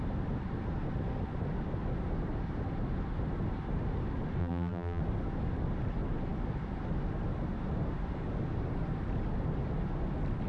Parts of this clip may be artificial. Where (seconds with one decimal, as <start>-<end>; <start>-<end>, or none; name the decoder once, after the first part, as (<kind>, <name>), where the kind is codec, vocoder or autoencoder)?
4.4-5.0 (vocoder, BigVGAN v2)